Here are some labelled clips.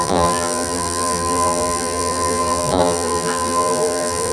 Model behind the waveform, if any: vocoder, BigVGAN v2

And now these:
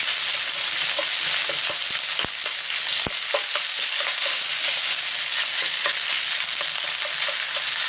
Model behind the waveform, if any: none